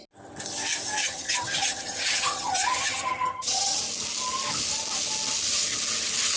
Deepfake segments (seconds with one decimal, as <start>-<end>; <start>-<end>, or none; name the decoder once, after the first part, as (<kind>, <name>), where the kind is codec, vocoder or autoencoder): 1.0-3.8 (vocoder, HiFi-GAN)